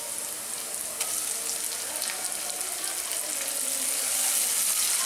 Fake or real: real